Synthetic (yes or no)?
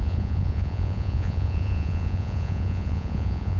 yes